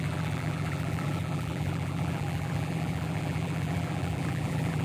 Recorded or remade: remade